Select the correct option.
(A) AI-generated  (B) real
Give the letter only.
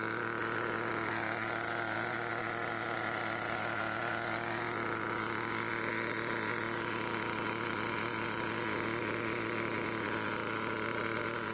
B